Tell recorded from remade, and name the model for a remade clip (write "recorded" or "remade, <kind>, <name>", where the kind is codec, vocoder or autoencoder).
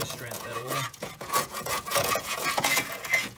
remade, vocoder, Vocos